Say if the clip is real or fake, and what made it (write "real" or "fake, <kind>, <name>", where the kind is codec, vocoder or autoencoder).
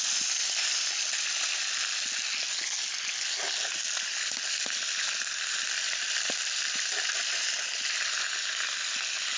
real